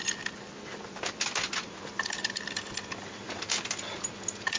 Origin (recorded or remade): recorded